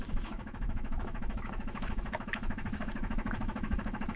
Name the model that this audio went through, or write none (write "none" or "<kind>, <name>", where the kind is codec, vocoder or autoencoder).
autoencoder, DAC-VAE